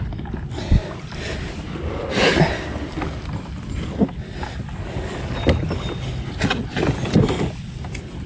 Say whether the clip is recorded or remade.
recorded